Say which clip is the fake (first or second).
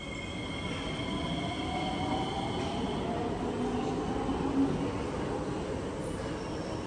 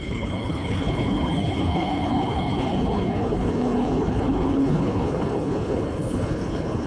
second